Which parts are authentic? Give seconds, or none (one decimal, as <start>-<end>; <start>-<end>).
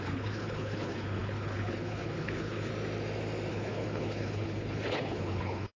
2.7-3.5